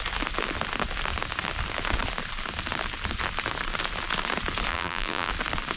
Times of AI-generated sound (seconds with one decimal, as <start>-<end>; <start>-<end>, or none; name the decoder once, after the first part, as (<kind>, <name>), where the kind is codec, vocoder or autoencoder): 4.7-5.3 (vocoder, BigVGAN v2)